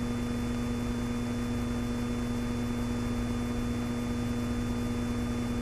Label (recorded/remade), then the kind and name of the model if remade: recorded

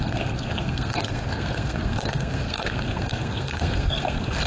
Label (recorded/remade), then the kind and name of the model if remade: remade, codec, SNAC